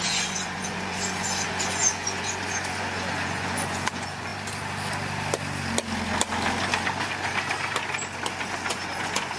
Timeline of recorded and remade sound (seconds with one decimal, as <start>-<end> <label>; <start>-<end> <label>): 0.0-4.3 remade; 4.3-8.7 recorded; 8.7-9.4 remade